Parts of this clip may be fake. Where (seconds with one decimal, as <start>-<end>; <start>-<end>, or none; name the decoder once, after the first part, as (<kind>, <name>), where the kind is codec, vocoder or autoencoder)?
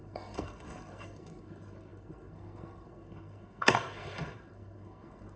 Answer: 0.0-5.4 (codec, SNAC)